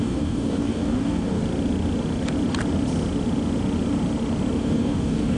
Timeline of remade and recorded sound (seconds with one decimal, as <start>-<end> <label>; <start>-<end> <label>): 0.0-1.4 remade; 1.4-4.6 recorded; 4.6-5.4 remade